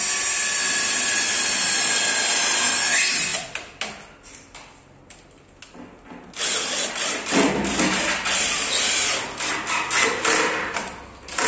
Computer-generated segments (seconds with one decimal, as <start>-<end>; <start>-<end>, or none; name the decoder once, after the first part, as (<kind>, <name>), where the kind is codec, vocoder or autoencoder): none